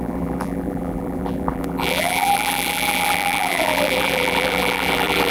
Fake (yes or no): yes